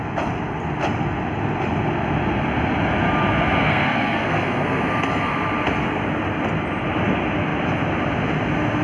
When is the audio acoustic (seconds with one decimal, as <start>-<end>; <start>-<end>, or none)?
0.0-3.6; 4.8-8.8